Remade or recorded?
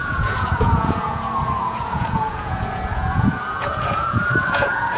remade